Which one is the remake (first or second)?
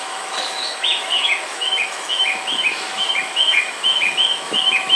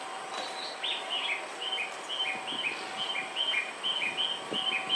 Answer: first